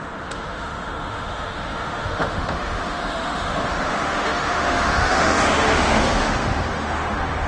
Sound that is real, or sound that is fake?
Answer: fake